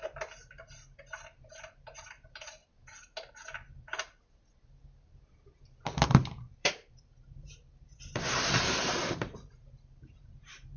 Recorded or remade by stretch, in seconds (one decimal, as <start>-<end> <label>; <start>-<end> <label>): 0.0-2.6 remade; 2.6-6.1 recorded; 6.1-10.8 remade